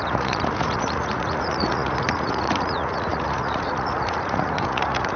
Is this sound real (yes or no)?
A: no